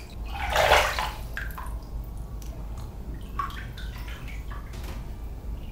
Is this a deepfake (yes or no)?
no